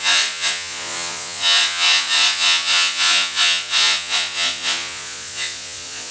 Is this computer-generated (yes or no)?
yes